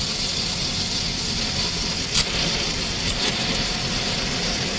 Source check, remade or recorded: recorded